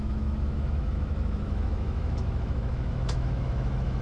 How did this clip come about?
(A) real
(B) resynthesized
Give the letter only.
B